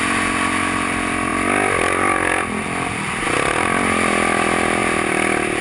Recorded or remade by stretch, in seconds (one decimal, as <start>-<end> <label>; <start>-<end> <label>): 0.0-5.6 recorded